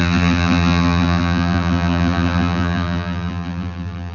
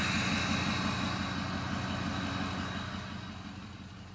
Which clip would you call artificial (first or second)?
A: first